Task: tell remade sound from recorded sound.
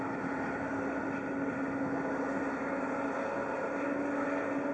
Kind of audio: recorded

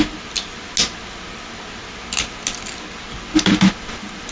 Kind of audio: recorded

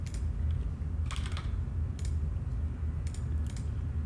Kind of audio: recorded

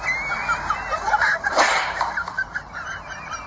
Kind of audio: recorded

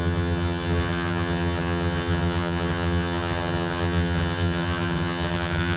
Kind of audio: remade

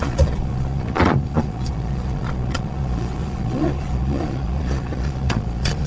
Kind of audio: remade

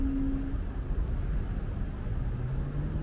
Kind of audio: recorded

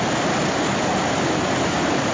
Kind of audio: recorded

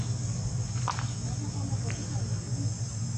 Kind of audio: recorded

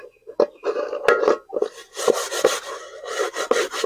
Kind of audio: recorded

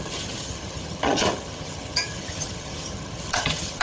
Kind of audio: remade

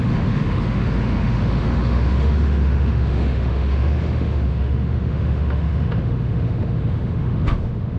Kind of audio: remade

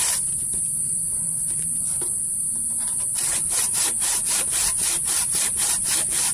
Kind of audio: remade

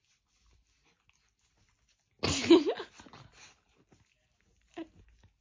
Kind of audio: recorded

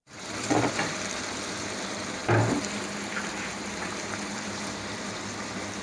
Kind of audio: remade